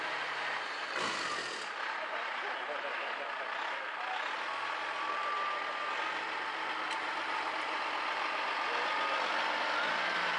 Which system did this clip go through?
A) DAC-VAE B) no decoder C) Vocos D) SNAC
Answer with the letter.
B